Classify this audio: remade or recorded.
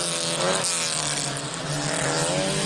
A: recorded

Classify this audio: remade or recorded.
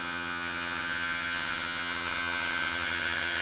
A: remade